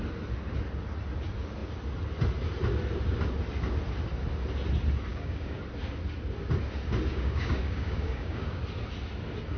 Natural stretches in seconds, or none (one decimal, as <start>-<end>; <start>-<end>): 0.0-5.1; 5.6-7.1; 8.6-9.6